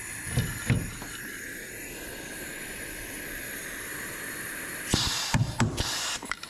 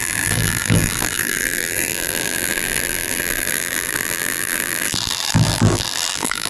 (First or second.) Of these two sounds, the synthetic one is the second